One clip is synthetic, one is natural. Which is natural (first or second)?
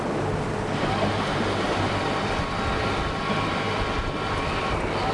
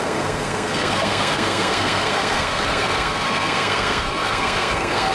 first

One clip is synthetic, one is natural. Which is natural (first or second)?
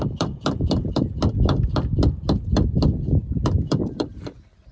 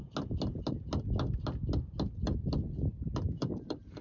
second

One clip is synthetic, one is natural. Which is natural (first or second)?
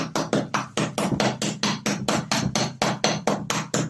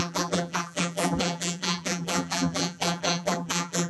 first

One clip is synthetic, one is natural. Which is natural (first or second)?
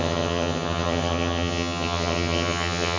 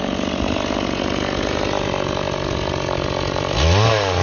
second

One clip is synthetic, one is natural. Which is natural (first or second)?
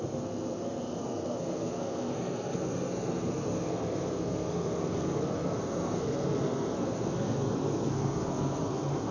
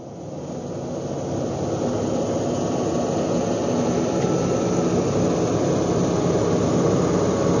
second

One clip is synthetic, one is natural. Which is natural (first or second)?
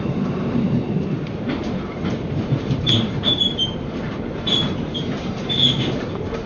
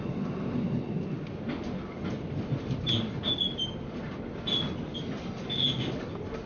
second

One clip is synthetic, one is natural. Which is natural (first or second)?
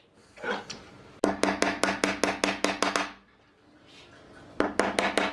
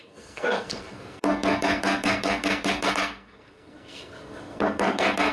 first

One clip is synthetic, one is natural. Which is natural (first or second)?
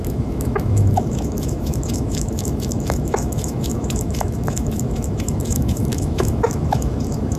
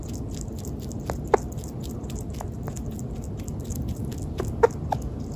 second